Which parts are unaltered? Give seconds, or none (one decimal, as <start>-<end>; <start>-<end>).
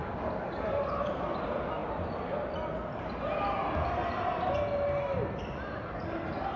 0.0-6.6